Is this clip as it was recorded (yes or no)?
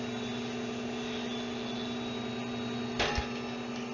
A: yes